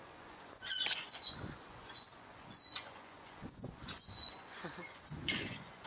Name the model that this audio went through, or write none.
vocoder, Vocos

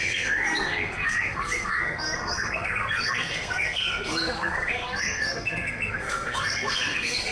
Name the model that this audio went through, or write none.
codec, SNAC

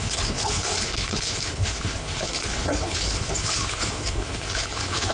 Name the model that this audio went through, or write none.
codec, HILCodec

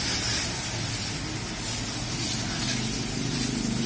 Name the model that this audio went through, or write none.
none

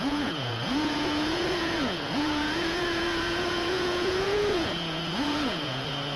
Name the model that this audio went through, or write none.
vocoder, Vocos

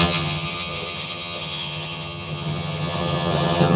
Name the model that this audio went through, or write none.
vocoder, HiFi-GAN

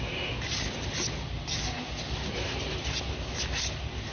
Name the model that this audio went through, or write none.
none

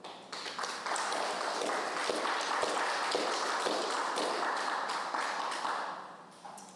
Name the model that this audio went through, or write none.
vocoder, BigVGAN v2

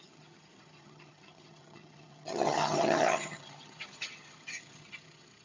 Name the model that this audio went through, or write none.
vocoder, HiFi-GAN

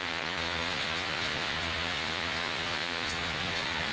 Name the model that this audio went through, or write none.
vocoder, Vocos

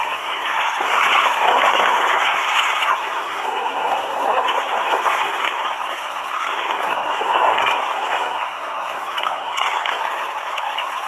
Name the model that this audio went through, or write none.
codec, SNAC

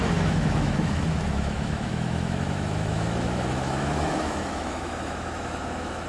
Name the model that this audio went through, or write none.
autoencoder, DAC-VAE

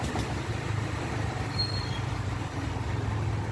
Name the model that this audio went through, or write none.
none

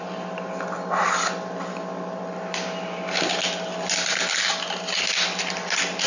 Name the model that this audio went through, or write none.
none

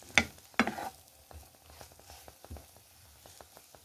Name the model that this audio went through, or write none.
none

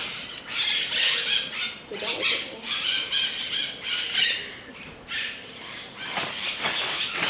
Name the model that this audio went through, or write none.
none